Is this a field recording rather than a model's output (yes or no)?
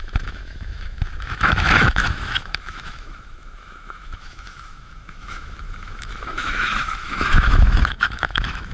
no